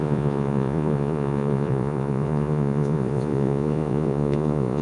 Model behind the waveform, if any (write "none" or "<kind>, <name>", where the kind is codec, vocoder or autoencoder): vocoder, Vocos